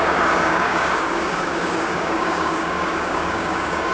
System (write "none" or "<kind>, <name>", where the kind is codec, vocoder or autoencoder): codec, DAC